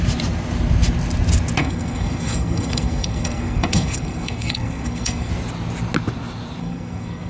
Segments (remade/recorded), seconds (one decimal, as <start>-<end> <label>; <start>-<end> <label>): 0.0-1.6 recorded; 1.6-5.3 remade; 5.3-6.6 recorded; 6.6-7.3 remade